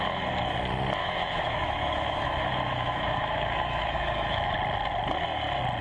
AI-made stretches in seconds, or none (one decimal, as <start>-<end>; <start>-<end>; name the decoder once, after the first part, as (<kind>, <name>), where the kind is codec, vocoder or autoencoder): 1.0-4.5 (autoencoder, DAC-VAE)